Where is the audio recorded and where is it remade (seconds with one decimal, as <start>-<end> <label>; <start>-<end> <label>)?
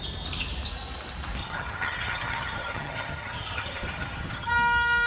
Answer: 0.0-1.4 recorded; 1.4-4.5 remade; 4.5-5.1 recorded